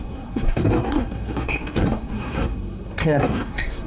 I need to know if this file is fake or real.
fake